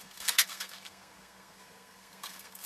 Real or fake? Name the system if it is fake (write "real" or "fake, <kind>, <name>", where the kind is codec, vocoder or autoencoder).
fake, codec, SNAC